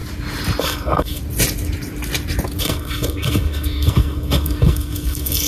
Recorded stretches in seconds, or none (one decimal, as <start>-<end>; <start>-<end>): 0.0-0.6; 1.2-2.6